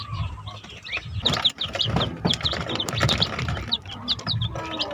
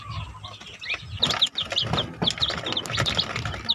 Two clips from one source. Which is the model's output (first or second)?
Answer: first